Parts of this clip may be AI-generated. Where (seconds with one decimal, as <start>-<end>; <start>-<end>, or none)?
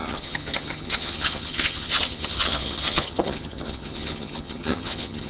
0.0-5.3